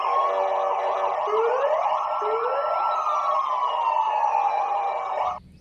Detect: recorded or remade recorded